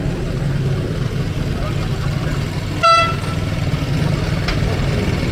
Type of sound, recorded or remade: recorded